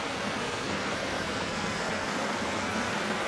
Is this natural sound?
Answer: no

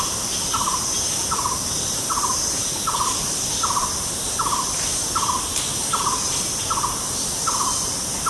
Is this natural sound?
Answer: yes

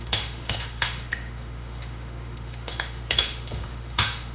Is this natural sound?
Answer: no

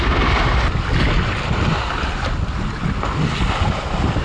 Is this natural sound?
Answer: yes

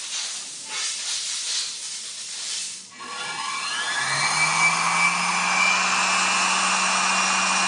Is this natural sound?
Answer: yes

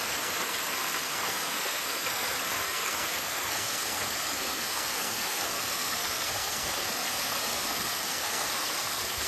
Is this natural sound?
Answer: no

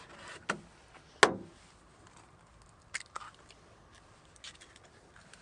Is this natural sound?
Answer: yes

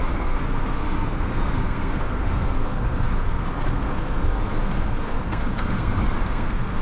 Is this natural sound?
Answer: no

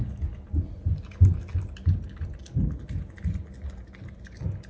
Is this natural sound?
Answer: yes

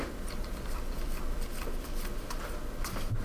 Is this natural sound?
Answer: yes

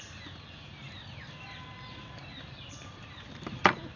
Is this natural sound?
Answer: yes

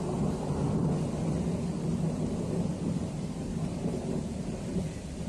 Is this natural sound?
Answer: yes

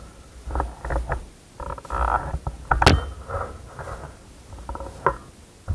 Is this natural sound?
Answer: yes